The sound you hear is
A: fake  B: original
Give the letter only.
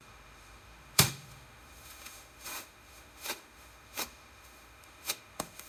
A